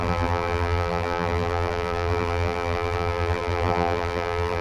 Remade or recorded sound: remade